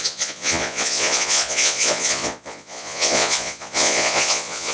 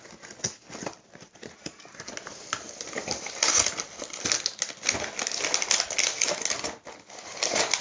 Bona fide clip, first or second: second